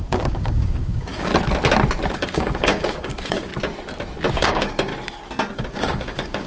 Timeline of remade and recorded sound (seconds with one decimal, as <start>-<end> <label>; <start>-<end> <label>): 0.0-1.3 remade; 1.3-2.1 recorded; 2.1-3.5 remade; 3.5-4.3 recorded; 4.3-4.9 remade; 4.9-5.5 recorded; 5.5-6.5 remade